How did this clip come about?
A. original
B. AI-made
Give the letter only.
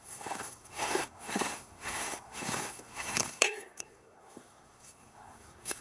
B